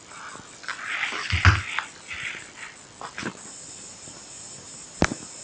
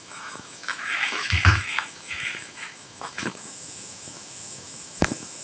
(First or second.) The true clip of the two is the first